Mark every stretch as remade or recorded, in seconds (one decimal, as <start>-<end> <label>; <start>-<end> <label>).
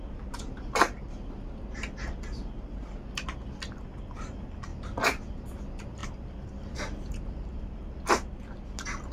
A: 0.0-6.0 recorded; 6.0-8.0 remade; 8.0-9.1 recorded